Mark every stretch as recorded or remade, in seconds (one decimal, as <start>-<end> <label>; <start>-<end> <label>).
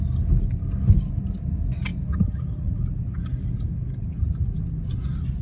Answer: 0.0-5.4 recorded